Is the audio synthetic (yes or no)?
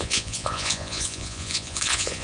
yes